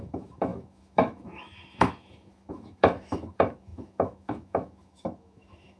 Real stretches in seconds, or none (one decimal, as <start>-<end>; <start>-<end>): none

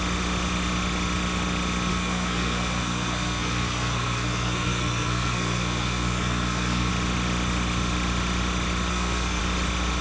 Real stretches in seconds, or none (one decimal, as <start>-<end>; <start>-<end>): 0.0-1.9; 6.9-8.9; 9.4-10.0

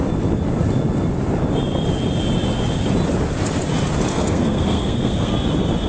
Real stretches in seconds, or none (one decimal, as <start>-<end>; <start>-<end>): 0.0-4.1; 5.3-5.9

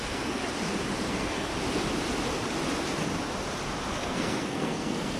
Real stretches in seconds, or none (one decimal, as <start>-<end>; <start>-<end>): 0.4-1.1; 1.5-3.9

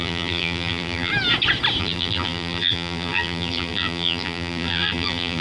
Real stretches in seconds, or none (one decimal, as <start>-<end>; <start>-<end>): 1.1-1.8

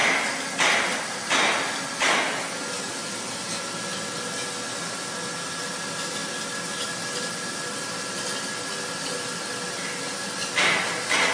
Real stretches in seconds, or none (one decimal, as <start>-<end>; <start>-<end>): 0.0-11.3

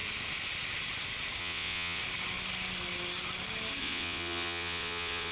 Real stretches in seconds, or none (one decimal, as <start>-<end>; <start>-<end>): 0.0-1.4; 2.0-3.8

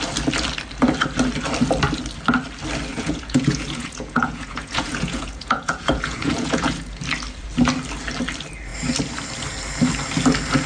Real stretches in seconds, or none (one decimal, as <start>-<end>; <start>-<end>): 0.0-2.9; 7.0-10.7